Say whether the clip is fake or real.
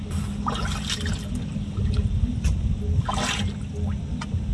real